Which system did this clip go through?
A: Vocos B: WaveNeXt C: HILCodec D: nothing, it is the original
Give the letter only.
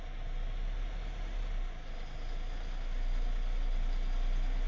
D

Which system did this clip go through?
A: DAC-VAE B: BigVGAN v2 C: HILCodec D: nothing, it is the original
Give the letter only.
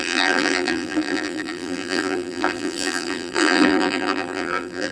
B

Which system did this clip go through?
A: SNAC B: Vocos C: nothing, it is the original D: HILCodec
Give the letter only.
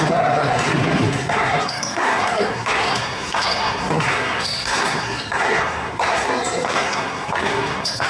A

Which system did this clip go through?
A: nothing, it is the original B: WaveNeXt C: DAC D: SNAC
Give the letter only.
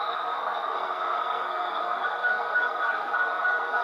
D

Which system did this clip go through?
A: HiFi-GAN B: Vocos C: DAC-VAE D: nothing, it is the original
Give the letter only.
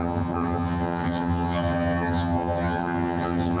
A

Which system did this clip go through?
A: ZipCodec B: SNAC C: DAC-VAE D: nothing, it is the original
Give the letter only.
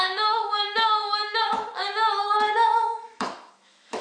C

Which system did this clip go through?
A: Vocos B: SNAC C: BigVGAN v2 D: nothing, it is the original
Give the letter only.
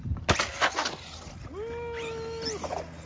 D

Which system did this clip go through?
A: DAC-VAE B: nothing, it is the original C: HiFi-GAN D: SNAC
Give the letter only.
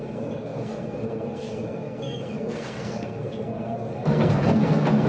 D